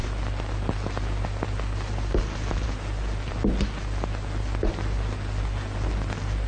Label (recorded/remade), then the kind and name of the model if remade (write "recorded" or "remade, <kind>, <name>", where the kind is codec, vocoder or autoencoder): recorded